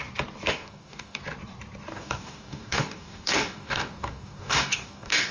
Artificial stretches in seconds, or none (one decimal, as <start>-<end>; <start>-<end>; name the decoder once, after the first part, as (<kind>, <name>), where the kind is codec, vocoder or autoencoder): 0.5-1.2 (codec, DAC); 1.9-5.3